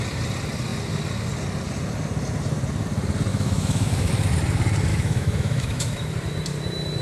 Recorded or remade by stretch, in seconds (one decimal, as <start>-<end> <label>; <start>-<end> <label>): 0.0-3.3 recorded; 3.3-4.1 remade; 4.1-4.9 recorded; 4.9-6.1 remade; 6.1-7.0 recorded